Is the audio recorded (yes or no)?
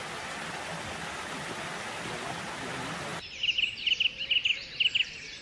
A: yes